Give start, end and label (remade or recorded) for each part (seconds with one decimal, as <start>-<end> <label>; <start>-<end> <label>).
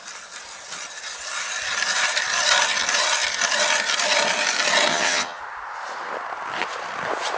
0.0-4.9 recorded; 4.9-5.4 remade; 5.4-7.4 recorded